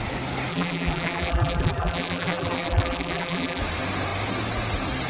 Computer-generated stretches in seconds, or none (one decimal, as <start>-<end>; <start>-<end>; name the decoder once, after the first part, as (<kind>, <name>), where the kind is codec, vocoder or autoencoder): 0.5-3.6 (vocoder, BigVGAN v2)

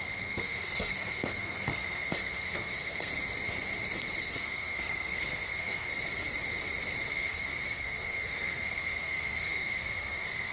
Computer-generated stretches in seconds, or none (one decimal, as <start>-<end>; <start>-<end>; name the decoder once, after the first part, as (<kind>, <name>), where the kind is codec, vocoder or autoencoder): 0.0-3.1 (codec, SNAC); 4.2-5.9; 7.1-10.5